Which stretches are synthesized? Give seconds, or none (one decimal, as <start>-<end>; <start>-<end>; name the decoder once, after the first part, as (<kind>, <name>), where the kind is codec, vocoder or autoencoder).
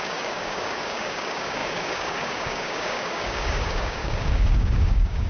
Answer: 0.0-5.3 (codec, DAC)